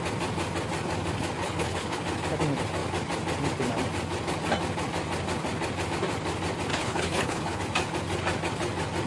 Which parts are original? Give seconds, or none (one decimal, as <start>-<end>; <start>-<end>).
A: 0.0-1.4; 2.0-6.7; 7.6-9.1